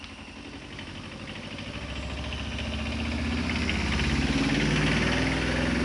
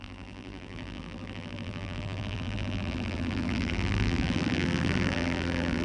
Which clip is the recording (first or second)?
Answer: first